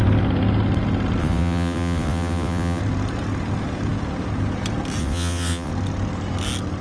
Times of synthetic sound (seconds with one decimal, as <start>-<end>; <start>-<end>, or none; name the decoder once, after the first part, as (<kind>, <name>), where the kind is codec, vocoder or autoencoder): 1.2-2.8 (vocoder, WaveNeXt); 5.0-5.7